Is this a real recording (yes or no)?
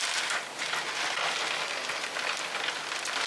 yes